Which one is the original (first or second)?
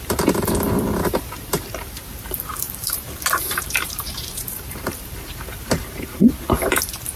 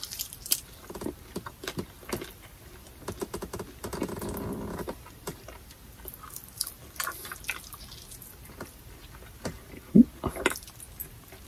second